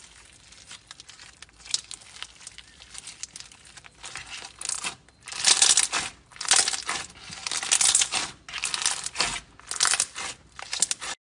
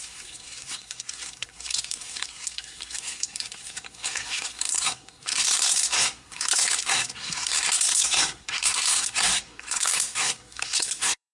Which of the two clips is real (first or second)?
first